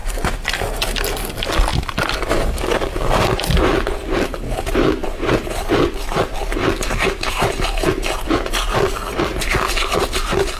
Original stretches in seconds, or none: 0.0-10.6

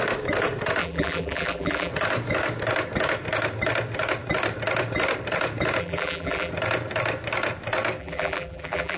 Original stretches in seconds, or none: 0.0-0.8; 1.9-5.8; 6.5-8.0

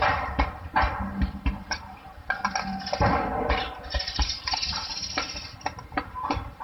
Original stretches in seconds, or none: 1.1-3.4; 4.9-5.9

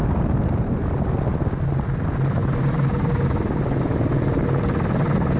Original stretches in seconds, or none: 0.0-5.4

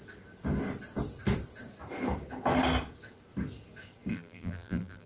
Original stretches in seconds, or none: 0.0-4.1

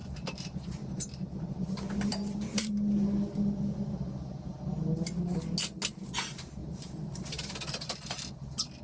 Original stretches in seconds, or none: 1.6-2.1; 2.7-6.6; 8.3-8.8

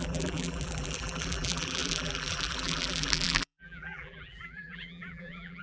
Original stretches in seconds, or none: none